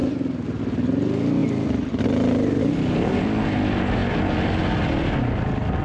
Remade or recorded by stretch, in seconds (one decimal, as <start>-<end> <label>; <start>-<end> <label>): 0.0-5.8 recorded